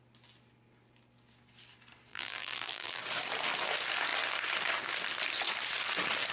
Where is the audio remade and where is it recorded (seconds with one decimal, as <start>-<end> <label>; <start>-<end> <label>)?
0.0-2.1 recorded; 2.1-3.0 remade; 3.0-6.3 recorded